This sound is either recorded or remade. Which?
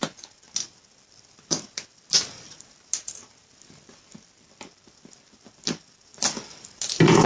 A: recorded